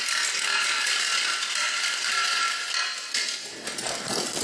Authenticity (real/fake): real